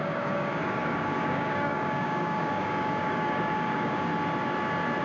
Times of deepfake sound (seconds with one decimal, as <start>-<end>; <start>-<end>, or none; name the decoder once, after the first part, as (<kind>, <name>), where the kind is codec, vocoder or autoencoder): 0.0-4.1 (codec, DAC)